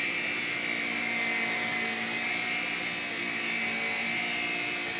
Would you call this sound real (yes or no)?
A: yes